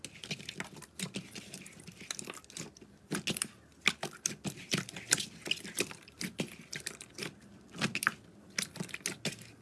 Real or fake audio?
real